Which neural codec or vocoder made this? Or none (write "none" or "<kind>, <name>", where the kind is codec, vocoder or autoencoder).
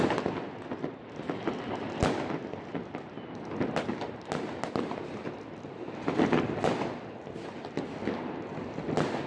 none